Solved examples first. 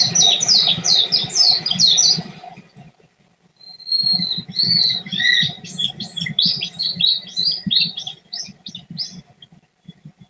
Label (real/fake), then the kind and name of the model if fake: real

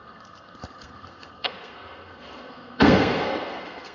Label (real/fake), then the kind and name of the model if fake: fake, codec, SNAC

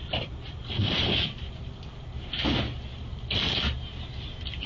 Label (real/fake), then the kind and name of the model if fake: real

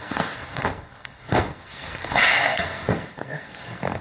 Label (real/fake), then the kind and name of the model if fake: fake, codec, SNAC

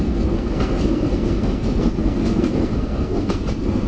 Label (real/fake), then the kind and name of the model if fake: fake, codec, SNAC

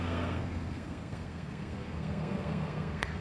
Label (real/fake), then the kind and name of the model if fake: fake, codec, SNAC